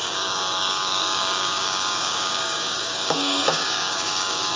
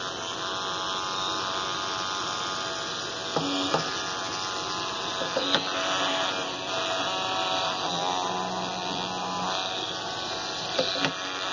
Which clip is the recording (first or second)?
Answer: second